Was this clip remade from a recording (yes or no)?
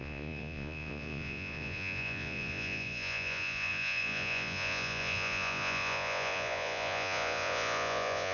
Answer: yes